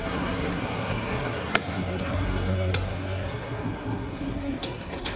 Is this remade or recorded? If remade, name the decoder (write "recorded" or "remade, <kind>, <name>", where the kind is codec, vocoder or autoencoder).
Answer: remade, codec, SNAC